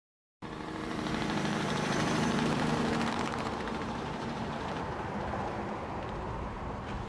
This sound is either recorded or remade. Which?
remade